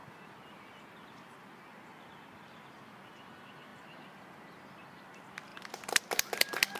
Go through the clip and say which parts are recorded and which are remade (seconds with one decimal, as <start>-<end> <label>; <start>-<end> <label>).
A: 0.0-6.8 recorded